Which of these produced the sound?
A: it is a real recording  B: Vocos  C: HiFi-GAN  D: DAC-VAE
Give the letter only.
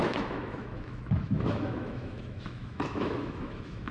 D